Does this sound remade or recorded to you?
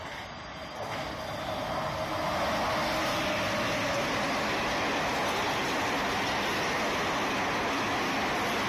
recorded